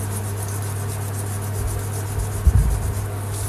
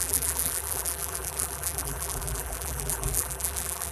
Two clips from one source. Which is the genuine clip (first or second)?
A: first